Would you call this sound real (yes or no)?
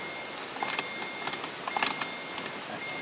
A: yes